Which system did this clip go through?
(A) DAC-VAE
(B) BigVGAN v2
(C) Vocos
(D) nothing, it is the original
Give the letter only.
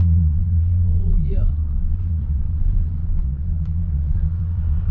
C